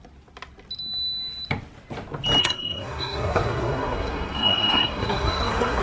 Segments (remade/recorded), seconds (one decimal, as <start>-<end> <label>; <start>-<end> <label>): 0.0-2.4 recorded; 2.4-5.8 remade

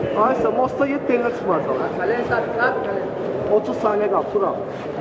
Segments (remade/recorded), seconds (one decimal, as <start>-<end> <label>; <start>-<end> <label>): 0.0-3.9 recorded; 3.9-5.0 remade

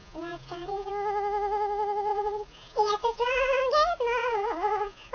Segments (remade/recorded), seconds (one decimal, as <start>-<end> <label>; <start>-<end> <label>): 0.0-0.9 remade; 0.9-2.1 recorded; 2.1-3.6 remade; 3.6-4.2 recorded; 4.2-5.1 remade

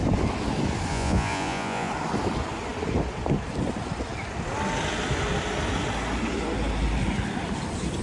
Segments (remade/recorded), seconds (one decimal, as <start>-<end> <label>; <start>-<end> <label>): 0.0-0.9 recorded; 0.9-1.9 remade; 1.9-8.0 recorded

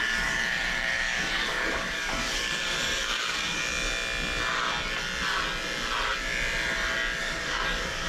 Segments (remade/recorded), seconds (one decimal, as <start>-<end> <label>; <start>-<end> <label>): 0.0-3.6 remade; 3.6-7.2 recorded; 7.2-8.1 remade

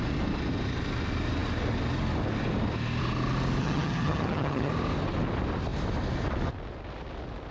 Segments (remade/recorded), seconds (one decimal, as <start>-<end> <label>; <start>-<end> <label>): 0.0-3.6 recorded; 3.6-4.7 remade; 4.7-7.5 recorded

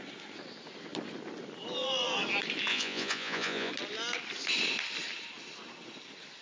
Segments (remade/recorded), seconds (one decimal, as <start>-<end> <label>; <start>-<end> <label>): 0.0-2.7 recorded; 2.7-3.7 remade; 3.7-6.4 recorded

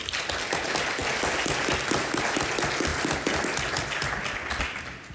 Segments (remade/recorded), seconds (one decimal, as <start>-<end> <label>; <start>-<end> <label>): 0.0-5.1 recorded